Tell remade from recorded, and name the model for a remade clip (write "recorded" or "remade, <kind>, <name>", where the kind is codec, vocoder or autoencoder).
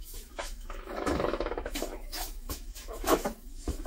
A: remade, autoencoder, DAC-VAE